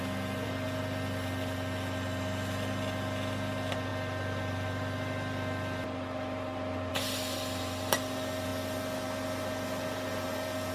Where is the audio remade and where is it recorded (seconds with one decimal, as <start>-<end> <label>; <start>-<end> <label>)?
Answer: 0.0-10.7 recorded